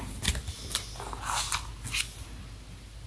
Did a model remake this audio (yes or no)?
no